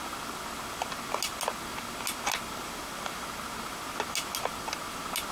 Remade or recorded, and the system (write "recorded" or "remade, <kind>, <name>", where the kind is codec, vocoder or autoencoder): recorded